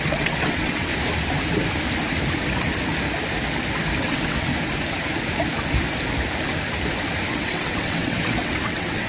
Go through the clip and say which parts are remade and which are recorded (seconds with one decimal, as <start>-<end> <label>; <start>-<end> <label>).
0.0-0.9 remade; 0.9-4.0 recorded; 4.0-4.5 remade; 4.5-7.3 recorded; 7.3-9.1 remade